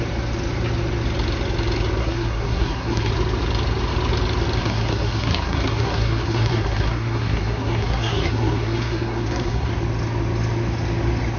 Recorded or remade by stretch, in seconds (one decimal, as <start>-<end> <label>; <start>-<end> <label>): 0.0-2.0 recorded; 2.0-3.1 remade; 3.1-4.6 recorded; 4.6-9.7 remade; 9.7-11.4 recorded